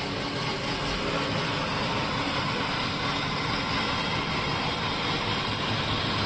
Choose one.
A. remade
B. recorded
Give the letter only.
B